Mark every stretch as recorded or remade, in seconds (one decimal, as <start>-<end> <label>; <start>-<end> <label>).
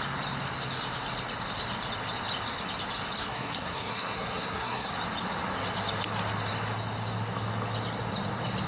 0.0-3.2 recorded; 3.2-4.9 remade; 4.9-8.7 recorded